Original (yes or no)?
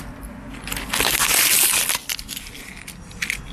yes